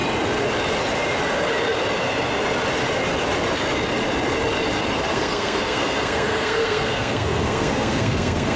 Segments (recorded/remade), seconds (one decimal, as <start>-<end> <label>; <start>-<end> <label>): 0.0-5.1 recorded; 5.1-8.6 remade

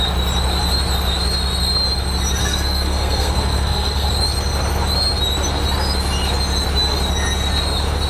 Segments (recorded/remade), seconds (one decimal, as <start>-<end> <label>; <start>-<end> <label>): 0.0-2.4 recorded; 2.4-4.1 remade; 4.1-8.1 recorded